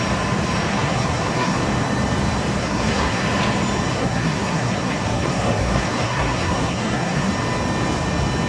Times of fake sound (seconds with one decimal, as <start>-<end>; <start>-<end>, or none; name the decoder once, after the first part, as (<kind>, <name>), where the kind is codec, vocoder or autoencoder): 0.7-1.6 (codec, SNAC); 2.6-3.2; 3.9-7.3